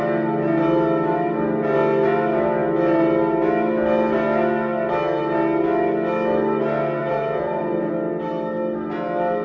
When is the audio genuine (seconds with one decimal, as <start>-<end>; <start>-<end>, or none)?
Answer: 0.0-7.0; 7.9-9.4

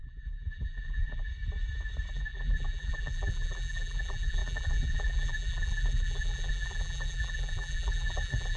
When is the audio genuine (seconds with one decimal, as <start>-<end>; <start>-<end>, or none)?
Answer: 1.3-2.1